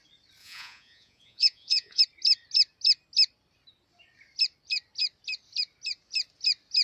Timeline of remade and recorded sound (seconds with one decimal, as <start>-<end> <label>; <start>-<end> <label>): 0.0-0.4 recorded; 0.4-2.0 remade; 2.0-6.8 recorded